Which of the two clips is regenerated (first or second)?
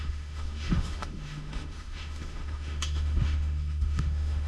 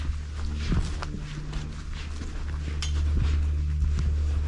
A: first